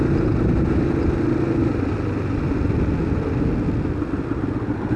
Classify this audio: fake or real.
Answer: real